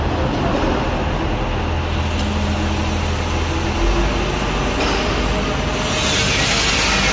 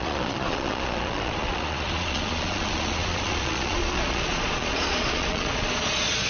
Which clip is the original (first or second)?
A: first